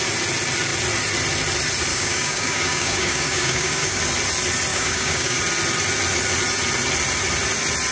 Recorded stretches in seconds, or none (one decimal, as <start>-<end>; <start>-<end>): 0.0-1.9; 4.0-4.7; 5.4-7.9